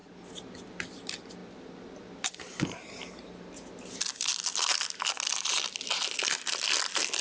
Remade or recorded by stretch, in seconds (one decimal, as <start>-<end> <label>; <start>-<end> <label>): 0.0-7.2 recorded